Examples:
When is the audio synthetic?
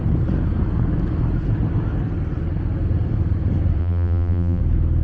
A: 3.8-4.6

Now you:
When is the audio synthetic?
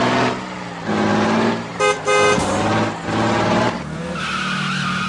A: 1.1-4.2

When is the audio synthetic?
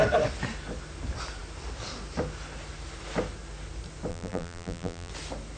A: 4.1-5.1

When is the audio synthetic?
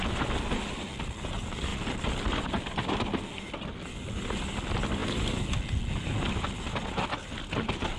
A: none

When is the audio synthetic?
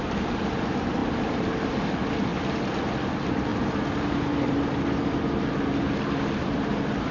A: 1.0-1.7; 3.5-4.7